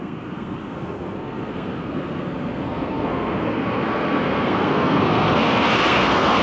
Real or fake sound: fake